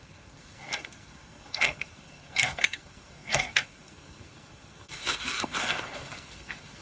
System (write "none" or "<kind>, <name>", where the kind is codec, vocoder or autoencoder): codec, SNAC